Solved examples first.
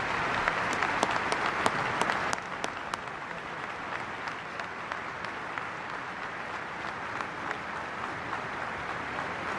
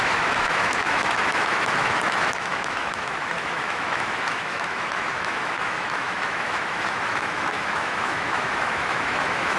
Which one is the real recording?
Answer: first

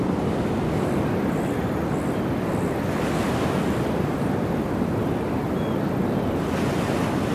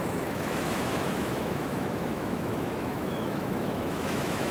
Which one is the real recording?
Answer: first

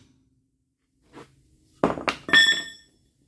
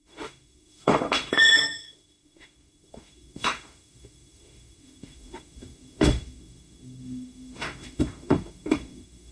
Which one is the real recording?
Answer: first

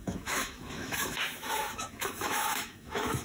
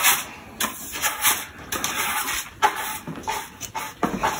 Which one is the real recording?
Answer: second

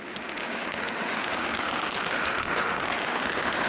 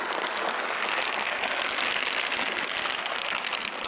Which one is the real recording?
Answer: second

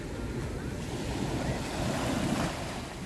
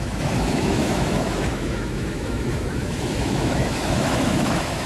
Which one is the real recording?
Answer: first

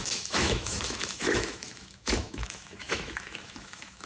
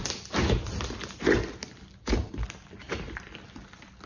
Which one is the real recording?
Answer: second